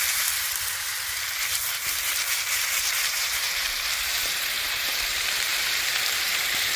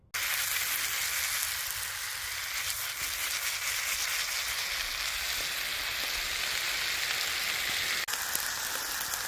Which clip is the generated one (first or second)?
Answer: first